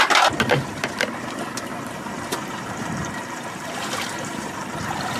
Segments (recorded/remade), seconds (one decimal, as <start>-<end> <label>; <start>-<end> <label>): 0.0-1.7 recorded; 1.7-4.8 remade; 4.8-5.2 recorded